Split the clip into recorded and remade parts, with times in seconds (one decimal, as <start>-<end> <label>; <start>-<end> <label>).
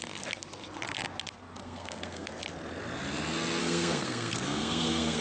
0.0-1.6 recorded; 1.6-2.3 remade; 2.3-3.6 recorded; 3.6-5.2 remade